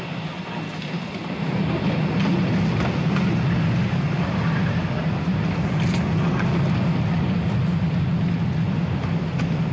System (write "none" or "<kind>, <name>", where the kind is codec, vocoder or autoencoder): none